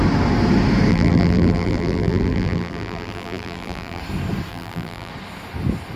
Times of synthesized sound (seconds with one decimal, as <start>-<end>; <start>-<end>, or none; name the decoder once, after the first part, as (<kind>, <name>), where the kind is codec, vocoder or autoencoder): 0.9-4.0 (vocoder, BigVGAN v2); 4.5-5.1